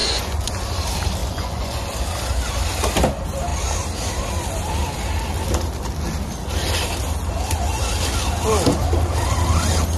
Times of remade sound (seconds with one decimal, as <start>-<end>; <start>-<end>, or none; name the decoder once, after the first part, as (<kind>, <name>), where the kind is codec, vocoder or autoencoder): 0.0-0.5 (vocoder, Vocos); 1.2-1.8